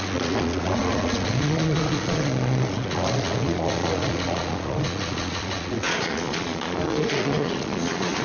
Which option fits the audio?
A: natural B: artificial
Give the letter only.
B